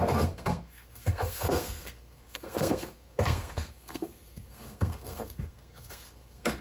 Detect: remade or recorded remade